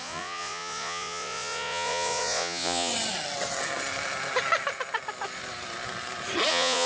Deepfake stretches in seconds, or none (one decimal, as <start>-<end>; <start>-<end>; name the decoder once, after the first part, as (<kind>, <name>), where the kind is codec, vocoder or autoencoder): 0.0-2.9 (vocoder, Vocos); 6.5-6.9